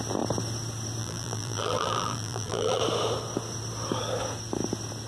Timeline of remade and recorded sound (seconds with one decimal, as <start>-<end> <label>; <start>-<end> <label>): 0.0-1.0 recorded; 1.0-2.8 remade; 2.8-5.1 recorded